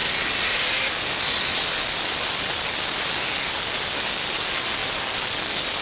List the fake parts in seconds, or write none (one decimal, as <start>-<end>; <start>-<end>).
none